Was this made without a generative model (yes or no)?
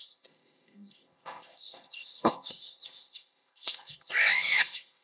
no